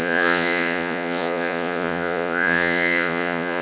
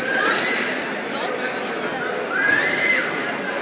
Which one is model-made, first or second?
first